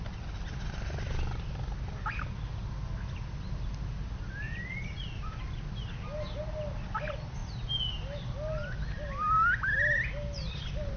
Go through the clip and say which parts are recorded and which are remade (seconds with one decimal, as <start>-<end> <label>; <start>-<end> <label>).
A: 0.0-11.0 recorded